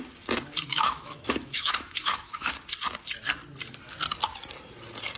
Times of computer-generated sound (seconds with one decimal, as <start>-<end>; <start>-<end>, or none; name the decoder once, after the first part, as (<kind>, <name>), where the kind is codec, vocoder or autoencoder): 0.7-2.5 (autoencoder, DAC-VAE)